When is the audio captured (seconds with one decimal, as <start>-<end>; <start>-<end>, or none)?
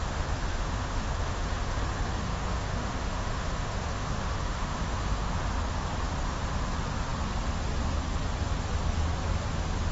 1.8-2.2; 5.4-9.9